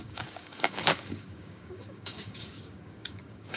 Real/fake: fake